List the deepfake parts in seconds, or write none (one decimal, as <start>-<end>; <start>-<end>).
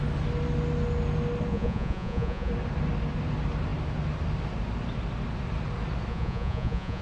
1.5-2.5; 6.1-7.0